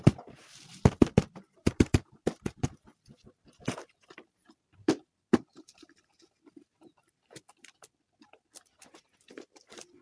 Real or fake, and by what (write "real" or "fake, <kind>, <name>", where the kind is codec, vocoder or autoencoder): fake, vocoder, BigVGAN v2